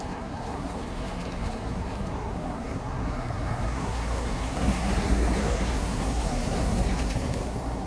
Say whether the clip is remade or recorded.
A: remade